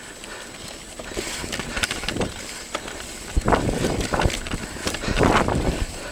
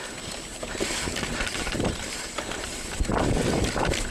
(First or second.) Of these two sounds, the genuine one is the first